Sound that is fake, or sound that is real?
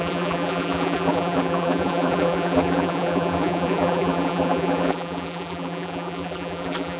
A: fake